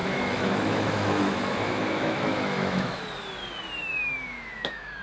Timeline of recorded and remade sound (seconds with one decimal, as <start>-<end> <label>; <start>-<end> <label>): 0.0-3.0 remade; 3.0-3.8 recorded; 3.8-5.0 remade